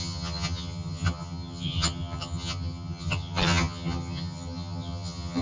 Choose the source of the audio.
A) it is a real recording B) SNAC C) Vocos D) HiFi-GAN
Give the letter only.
D